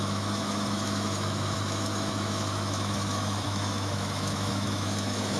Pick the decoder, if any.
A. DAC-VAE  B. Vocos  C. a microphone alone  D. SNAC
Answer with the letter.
A